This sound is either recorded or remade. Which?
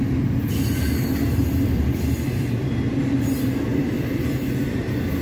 remade